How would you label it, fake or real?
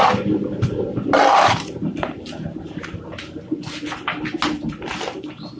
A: real